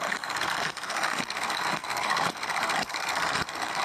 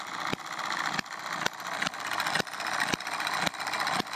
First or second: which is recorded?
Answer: second